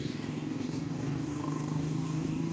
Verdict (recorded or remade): remade